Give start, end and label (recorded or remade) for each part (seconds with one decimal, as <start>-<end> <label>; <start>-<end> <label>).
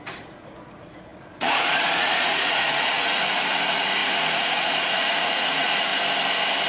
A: 0.0-5.9 remade; 5.9-6.7 recorded